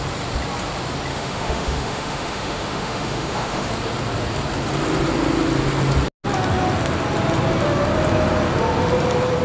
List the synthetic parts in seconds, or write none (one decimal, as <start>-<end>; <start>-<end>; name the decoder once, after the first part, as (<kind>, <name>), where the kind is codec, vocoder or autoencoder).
1.1-3.7 (autoencoder, DAC-VAE)